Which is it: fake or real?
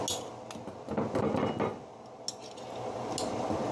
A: real